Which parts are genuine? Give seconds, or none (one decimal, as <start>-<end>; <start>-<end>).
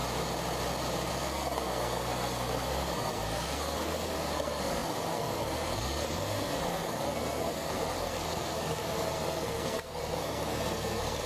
0.0-1.1